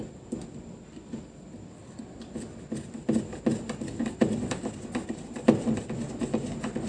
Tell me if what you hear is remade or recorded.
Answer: recorded